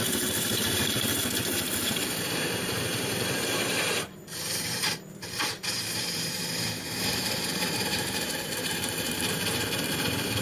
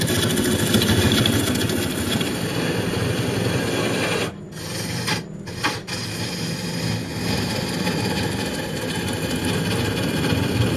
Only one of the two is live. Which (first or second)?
second